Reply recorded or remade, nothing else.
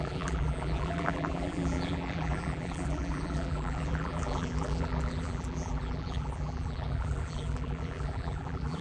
remade